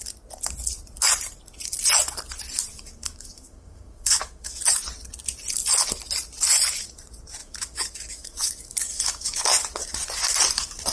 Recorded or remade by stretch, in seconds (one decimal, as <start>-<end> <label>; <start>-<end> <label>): 0.0-2.7 recorded; 2.7-4.6 remade; 4.6-7.4 recorded; 7.4-9.4 remade; 9.4-10.9 recorded